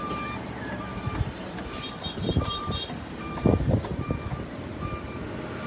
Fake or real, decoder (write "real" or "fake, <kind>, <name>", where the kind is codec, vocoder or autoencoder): fake, vocoder, BigVGAN v2